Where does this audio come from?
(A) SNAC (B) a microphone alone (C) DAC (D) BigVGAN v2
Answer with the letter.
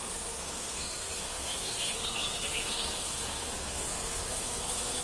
A